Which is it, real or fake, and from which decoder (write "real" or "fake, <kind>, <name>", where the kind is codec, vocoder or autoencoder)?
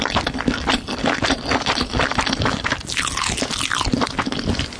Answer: real